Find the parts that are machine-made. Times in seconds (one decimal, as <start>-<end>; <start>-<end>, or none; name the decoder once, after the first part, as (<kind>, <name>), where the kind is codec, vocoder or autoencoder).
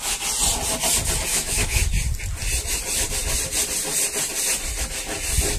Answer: 1.3-1.8 (autoencoder, DAC-VAE)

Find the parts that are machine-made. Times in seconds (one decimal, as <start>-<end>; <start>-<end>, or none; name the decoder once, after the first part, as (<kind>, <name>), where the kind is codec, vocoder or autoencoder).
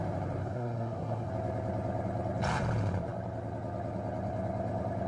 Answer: 0.4-1.3 (codec, SNAC)